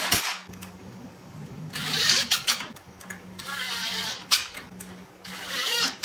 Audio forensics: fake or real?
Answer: fake